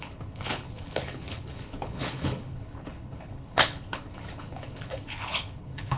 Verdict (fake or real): fake